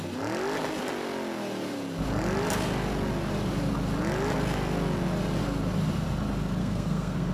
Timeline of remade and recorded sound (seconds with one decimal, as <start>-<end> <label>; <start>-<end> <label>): 0.0-6.6 recorded; 6.6-7.3 remade